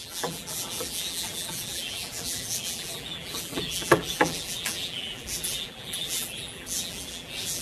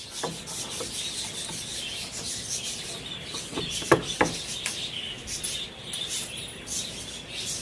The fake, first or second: first